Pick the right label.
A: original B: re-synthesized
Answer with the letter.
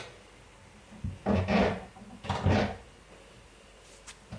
A